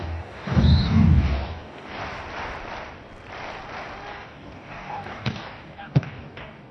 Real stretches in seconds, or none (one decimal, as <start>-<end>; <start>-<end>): 2.0-4.1